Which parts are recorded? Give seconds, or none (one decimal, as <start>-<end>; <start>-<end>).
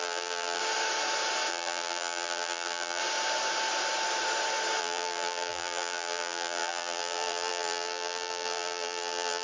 0.6-1.5; 3.0-4.8